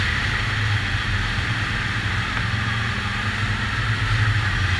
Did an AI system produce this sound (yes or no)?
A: no